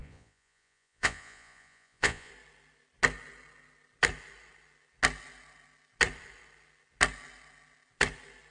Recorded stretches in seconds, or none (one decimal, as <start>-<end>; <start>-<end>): 2.3-8.5